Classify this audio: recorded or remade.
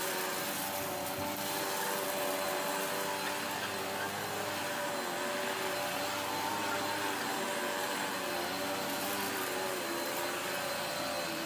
recorded